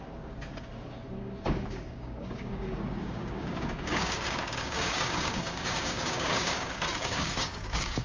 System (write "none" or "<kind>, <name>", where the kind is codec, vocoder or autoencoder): codec, DAC